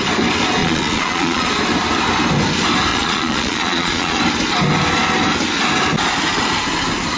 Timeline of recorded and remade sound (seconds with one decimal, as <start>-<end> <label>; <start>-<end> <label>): 0.0-0.6 recorded; 0.6-1.5 remade; 1.5-2.9 recorded; 2.9-4.2 remade; 4.2-7.2 recorded